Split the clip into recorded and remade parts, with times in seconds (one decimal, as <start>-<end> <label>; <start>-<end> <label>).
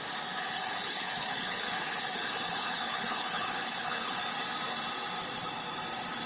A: 0.0-0.4 recorded; 0.4-4.2 remade; 4.2-6.3 recorded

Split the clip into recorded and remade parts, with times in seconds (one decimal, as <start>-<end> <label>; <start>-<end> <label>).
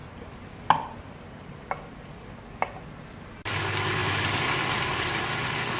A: 0.0-5.8 recorded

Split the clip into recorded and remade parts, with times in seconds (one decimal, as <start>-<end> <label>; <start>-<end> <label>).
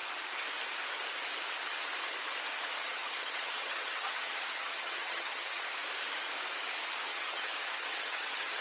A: 0.0-2.8 recorded; 2.8-5.6 remade; 5.6-7.1 recorded; 7.1-8.6 remade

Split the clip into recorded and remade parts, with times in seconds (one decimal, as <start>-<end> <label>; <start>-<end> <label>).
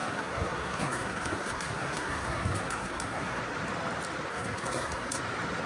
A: 0.0-3.4 remade; 3.4-4.3 recorded; 4.3-5.2 remade; 5.2-5.7 recorded